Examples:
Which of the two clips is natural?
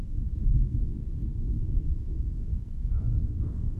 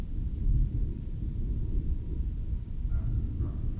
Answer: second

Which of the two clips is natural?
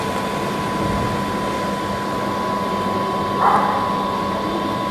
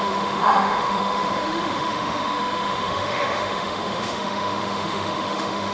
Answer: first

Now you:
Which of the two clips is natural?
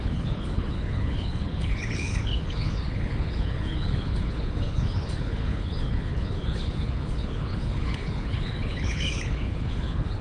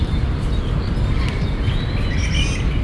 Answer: second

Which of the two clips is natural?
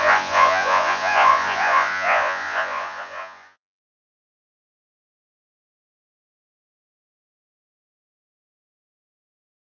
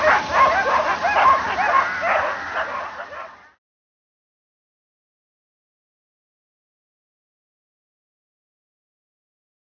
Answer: second